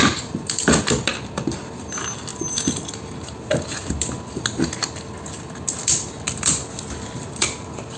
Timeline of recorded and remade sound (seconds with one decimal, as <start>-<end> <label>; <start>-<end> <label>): 0.0-2.3 remade; 2.3-7.0 recorded; 7.0-8.0 remade